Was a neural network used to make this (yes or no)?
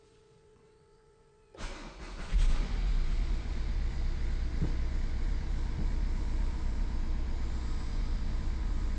yes